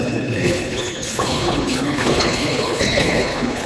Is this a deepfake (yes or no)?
yes